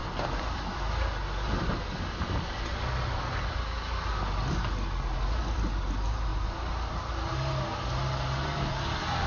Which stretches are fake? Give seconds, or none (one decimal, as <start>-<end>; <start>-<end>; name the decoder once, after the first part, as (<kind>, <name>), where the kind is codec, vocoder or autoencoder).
none